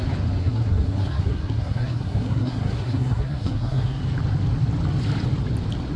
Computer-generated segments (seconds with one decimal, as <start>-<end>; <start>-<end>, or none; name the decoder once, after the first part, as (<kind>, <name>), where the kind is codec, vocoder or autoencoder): 0.4-4.0 (codec, SNAC)